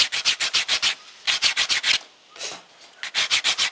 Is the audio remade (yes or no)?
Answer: no